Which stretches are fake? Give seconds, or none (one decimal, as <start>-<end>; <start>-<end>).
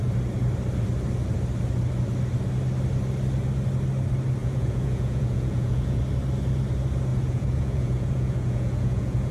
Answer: 4.4-6.0; 7.1-9.3